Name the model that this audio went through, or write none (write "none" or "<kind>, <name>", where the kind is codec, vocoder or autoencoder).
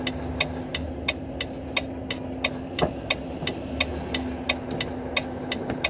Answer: none